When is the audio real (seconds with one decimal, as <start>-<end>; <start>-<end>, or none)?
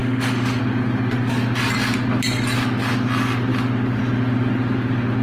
0.6-5.2